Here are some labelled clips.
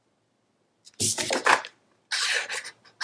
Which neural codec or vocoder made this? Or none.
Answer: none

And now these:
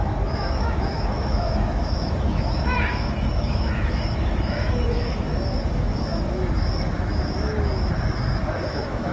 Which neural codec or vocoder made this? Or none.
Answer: autoencoder, DAC-VAE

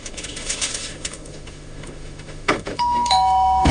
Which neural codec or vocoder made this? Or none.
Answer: autoencoder, DAC-VAE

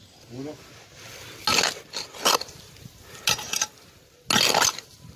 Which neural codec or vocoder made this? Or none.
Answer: none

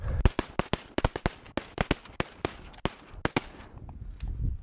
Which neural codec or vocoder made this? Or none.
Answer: none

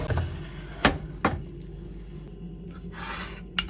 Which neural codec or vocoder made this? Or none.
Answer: none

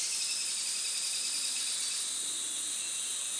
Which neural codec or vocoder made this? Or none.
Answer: none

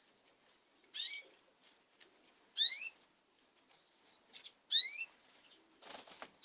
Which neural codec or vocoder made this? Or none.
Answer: none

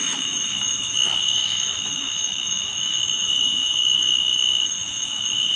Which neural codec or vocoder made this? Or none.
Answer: autoencoder, DAC-VAE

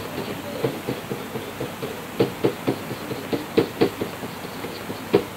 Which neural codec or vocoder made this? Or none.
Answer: none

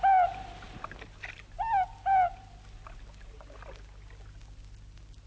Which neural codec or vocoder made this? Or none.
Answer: none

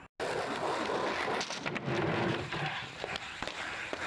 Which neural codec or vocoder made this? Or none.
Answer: none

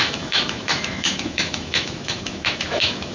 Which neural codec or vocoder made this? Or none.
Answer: autoencoder, DAC-VAE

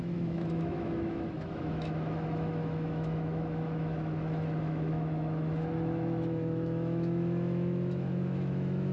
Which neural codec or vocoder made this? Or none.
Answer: autoencoder, DAC-VAE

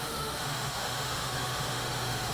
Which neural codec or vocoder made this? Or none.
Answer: autoencoder, DAC-VAE